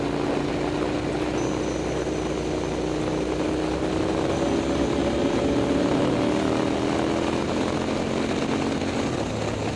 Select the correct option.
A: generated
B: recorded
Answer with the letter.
B